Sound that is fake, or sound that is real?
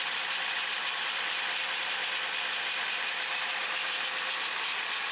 fake